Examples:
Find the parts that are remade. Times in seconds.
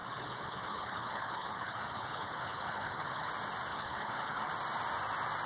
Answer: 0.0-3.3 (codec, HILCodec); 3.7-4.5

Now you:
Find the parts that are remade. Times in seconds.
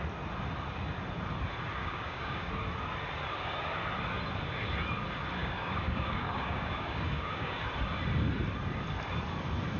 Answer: 1.8-2.5 (codec, DAC); 5.4-7.6